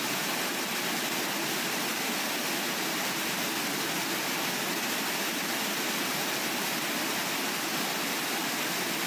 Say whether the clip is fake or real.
real